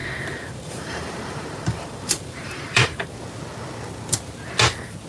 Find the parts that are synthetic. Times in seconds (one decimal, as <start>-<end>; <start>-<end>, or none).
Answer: 0.0-3.1